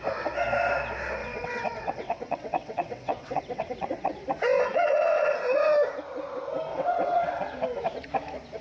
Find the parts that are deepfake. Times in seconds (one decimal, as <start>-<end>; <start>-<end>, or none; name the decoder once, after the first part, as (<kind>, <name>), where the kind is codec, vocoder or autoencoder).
1.2-4.1 (vocoder, WaveNeXt); 4.7-5.3; 6.7-7.3